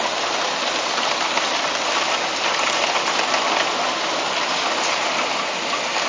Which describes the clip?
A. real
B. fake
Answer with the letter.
A